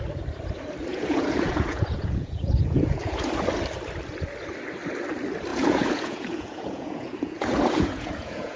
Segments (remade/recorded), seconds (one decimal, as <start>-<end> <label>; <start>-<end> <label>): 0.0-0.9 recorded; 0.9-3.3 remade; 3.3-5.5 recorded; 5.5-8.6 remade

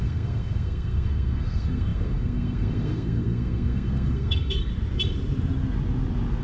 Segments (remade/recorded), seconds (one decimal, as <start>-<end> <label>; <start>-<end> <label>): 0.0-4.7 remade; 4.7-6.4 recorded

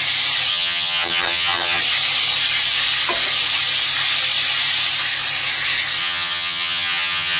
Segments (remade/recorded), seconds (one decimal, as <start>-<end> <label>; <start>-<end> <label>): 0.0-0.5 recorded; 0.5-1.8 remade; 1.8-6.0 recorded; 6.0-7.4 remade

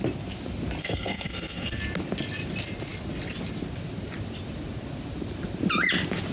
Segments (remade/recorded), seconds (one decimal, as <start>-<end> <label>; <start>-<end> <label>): 0.0-0.8 recorded; 0.8-1.8 remade; 1.8-6.3 recorded